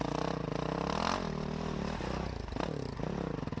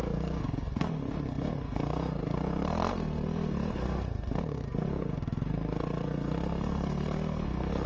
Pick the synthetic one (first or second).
second